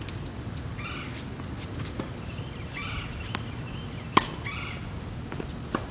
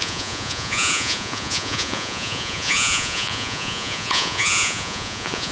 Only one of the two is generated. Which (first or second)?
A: second